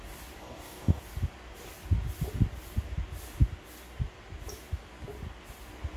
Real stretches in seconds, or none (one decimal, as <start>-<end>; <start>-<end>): 0.0-0.4; 1.0-6.0